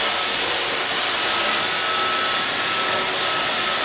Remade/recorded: recorded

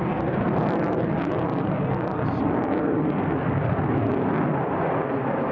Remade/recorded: recorded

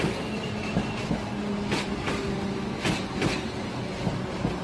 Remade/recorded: recorded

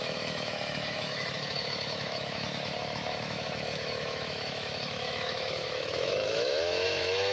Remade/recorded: remade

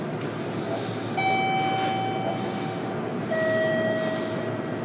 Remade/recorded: recorded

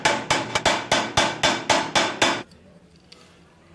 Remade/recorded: recorded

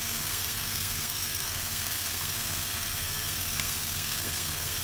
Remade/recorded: remade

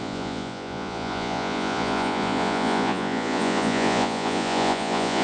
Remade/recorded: remade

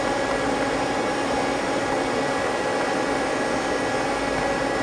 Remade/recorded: recorded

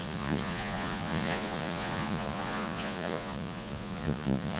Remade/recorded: remade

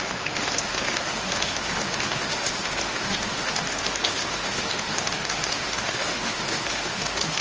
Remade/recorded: remade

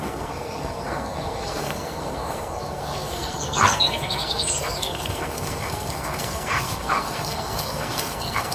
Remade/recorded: remade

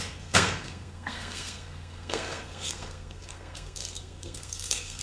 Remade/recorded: remade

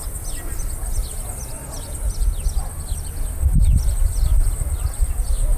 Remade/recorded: recorded